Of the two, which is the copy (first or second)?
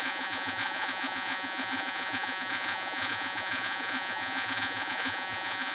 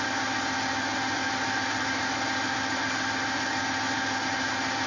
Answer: first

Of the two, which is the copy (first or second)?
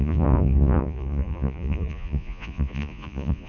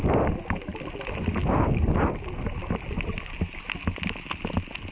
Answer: first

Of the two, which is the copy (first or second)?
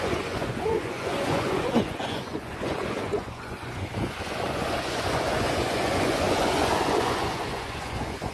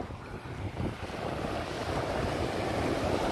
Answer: first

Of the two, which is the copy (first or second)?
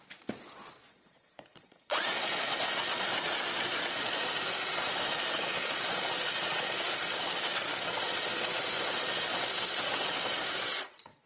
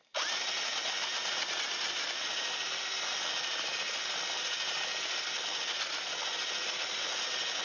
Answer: first